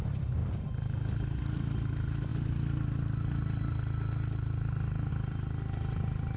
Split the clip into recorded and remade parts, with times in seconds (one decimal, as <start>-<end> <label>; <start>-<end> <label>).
0.0-2.3 remade; 2.3-5.1 recorded; 5.1-6.4 remade